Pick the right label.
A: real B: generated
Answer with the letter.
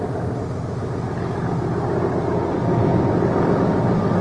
A